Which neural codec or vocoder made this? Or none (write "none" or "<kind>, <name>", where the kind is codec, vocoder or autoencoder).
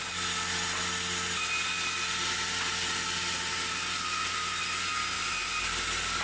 none